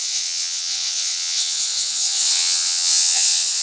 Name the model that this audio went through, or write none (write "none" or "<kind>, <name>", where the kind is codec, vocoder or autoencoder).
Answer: vocoder, WaveNeXt